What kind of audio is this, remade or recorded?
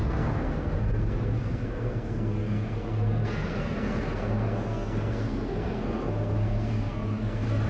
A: remade